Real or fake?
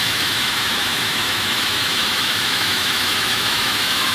fake